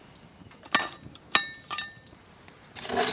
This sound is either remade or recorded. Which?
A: recorded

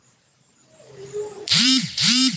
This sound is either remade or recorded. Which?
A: remade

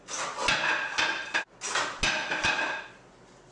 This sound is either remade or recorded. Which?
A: recorded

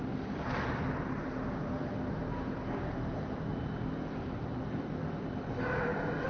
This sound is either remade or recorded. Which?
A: recorded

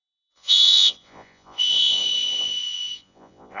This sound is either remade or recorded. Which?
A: remade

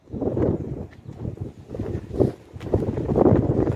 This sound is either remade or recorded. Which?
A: recorded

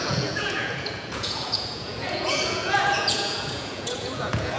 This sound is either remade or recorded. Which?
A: remade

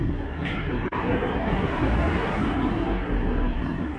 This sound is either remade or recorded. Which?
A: remade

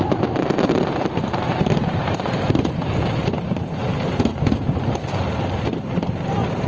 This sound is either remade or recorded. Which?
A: remade